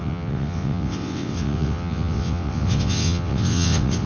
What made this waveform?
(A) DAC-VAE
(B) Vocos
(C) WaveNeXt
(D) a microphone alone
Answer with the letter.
C